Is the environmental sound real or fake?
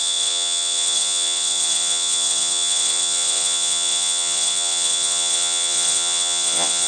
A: fake